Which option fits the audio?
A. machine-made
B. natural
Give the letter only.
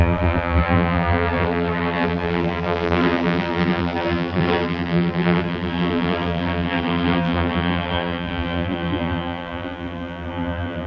A